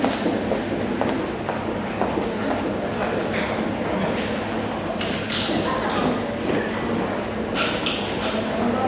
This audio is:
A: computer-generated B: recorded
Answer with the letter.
B